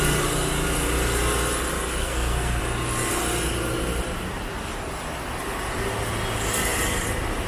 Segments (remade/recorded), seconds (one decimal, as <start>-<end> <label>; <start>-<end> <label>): 0.0-2.0 recorded; 2.0-2.6 remade; 2.6-7.5 recorded

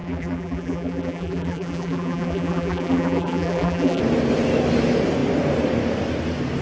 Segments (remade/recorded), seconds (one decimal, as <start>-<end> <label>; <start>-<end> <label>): 0.0-4.0 remade; 4.0-6.6 recorded

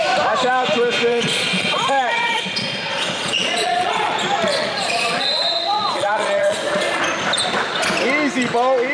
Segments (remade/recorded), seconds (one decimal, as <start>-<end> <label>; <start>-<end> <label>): 0.0-1.1 recorded; 1.1-4.1 remade; 4.1-4.5 recorded; 4.5-7.0 remade; 7.0-8.9 recorded

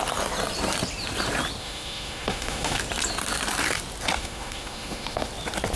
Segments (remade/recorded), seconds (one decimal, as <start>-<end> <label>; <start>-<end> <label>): 0.0-1.6 recorded; 1.6-2.8 remade; 2.8-4.2 recorded; 4.2-5.3 remade; 5.3-5.8 recorded

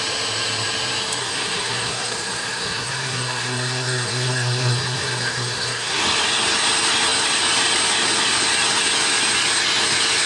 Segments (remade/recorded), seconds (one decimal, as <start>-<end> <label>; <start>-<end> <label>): 0.0-1.2 recorded; 1.2-6.0 remade; 6.0-10.3 recorded